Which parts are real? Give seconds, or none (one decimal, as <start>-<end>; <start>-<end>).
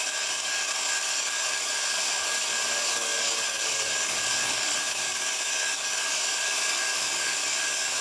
none